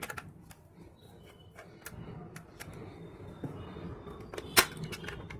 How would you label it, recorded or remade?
recorded